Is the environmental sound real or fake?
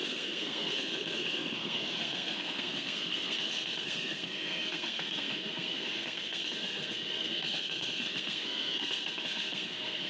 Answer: fake